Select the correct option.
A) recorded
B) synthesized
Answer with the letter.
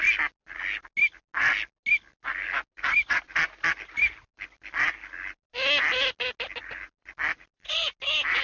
A